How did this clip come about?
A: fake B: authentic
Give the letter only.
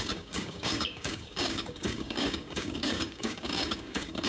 A